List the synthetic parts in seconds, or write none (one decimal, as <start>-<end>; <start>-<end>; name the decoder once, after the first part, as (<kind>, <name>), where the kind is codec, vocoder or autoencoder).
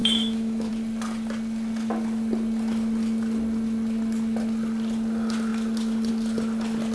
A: 0.0-0.7 (autoencoder, DAC-VAE)